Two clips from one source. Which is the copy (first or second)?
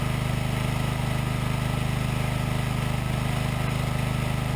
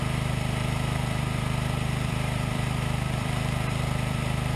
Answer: second